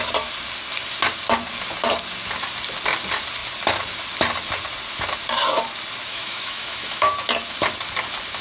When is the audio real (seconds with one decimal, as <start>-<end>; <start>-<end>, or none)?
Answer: 0.0-6.1; 7.1-8.4